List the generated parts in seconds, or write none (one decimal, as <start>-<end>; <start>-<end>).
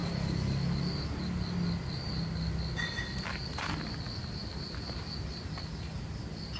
none